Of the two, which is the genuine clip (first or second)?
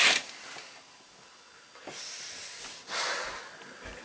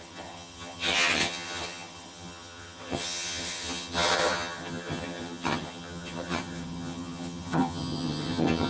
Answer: first